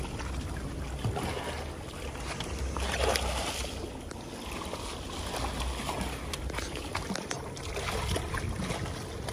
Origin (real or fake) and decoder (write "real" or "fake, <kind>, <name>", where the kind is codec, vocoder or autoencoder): real